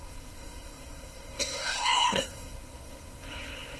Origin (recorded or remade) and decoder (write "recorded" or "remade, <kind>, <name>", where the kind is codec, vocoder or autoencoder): remade, codec, SNAC